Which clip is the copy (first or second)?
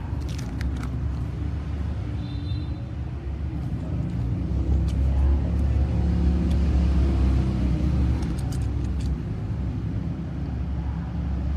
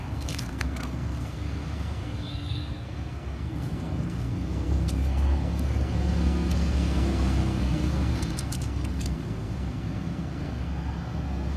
second